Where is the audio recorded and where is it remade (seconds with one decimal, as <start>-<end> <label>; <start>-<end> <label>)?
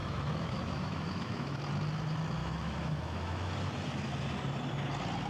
0.0-1.6 remade; 1.6-2.4 recorded; 2.4-3.5 remade; 3.5-5.3 recorded